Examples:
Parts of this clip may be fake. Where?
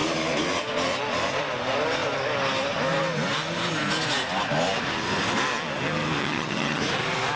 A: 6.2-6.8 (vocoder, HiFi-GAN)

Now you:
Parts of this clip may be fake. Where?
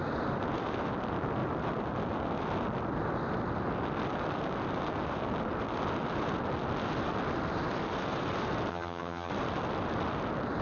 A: 8.7-9.3 (vocoder, HiFi-GAN)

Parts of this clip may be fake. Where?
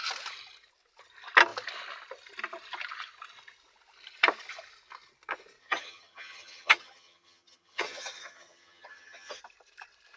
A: 5.6-9.4 (vocoder, HiFi-GAN)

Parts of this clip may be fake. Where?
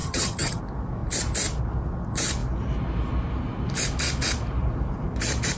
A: 0.0-0.6 (vocoder, HiFi-GAN)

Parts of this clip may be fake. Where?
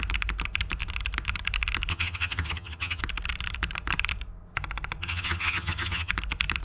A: 1.9-3.0 (vocoder, HiFi-GAN); 5.0-6.1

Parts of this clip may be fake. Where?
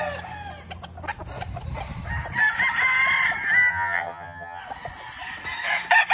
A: 3.7-4.6 (vocoder, HiFi-GAN)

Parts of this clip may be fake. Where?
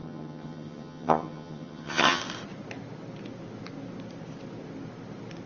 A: 0.0-2.2 (vocoder, HiFi-GAN)